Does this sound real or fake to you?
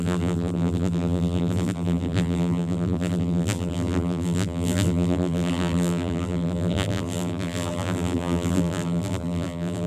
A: fake